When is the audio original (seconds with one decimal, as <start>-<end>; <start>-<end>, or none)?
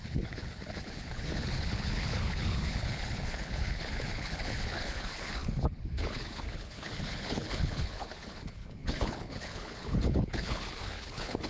none